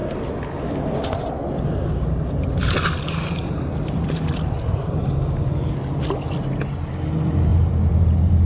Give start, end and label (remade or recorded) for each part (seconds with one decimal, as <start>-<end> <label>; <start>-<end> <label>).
0.0-8.5 recorded